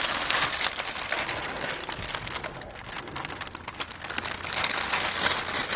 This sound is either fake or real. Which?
real